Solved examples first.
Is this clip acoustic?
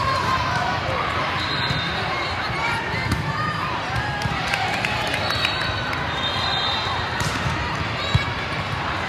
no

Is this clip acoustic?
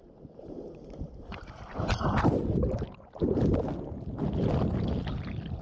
yes